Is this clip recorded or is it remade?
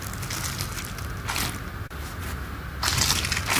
recorded